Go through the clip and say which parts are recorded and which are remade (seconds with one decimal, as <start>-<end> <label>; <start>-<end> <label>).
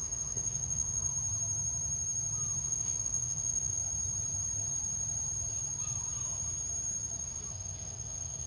0.0-1.1 remade; 1.1-2.6 recorded; 2.6-3.8 remade; 3.8-7.5 recorded; 7.5-8.5 remade